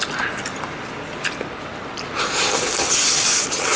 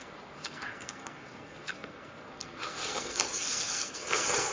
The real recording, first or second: first